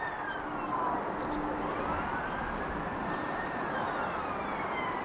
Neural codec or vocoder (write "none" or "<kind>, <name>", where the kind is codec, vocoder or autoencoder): none